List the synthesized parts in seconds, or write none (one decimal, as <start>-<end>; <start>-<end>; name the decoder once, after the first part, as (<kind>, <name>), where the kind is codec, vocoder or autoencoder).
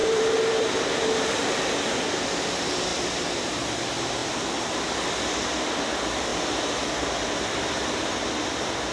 0.0-1.5 (vocoder, BigVGAN v2); 2.9-3.6